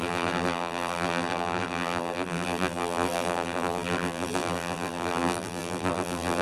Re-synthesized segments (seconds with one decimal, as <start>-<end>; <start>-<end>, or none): 0.0-6.4